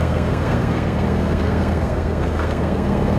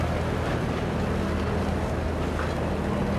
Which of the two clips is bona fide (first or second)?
second